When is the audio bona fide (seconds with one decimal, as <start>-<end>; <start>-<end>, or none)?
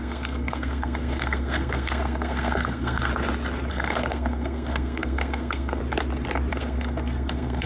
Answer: 3.1-3.7; 5.8-6.5